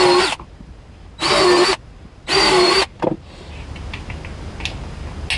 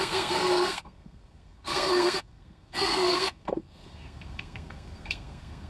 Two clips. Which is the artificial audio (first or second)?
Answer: second